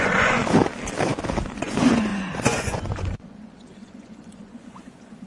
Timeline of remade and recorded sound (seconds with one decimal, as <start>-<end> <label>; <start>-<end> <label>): 0.0-0.4 remade; 0.4-1.5 recorded; 1.5-5.3 remade